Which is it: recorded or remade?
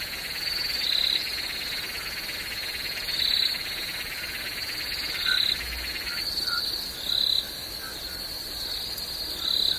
recorded